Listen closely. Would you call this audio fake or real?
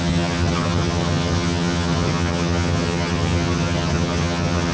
fake